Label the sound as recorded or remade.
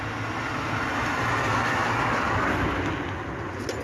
recorded